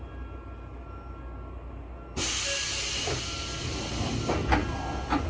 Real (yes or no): yes